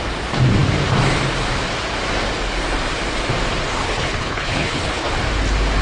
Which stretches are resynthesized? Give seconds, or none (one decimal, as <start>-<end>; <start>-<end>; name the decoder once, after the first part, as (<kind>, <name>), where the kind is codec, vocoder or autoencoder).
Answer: 3.8-5.1 (codec, HILCodec)